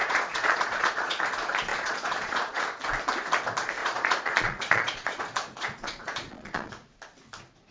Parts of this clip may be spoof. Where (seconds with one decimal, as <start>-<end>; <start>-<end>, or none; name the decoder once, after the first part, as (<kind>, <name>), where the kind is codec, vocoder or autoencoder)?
0.0-1.2 (vocoder, Vocos); 1.7-2.6; 3.8-6.7